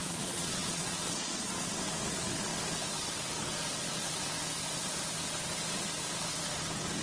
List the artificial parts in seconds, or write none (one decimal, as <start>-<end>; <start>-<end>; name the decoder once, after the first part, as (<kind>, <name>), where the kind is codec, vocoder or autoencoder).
0.0-1.7 (vocoder, Vocos)